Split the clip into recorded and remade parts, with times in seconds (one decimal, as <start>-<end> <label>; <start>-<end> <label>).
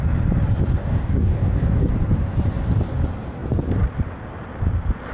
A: 0.0-0.8 recorded; 0.8-1.9 remade; 1.9-5.1 recorded